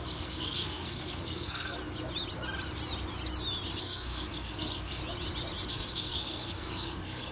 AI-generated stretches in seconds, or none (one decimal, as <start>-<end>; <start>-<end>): 0.0-1.8; 3.8-5.0; 5.7-7.3